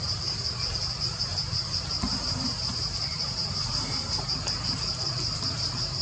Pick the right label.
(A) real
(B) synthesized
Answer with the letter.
B